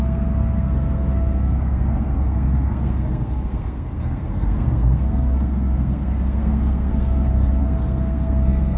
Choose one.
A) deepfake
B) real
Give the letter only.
A